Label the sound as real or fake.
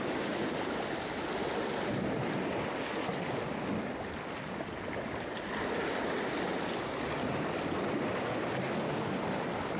real